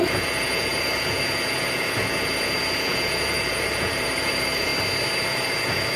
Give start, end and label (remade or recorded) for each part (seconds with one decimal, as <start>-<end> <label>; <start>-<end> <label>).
0.0-4.7 remade; 4.7-5.2 recorded; 5.2-6.0 remade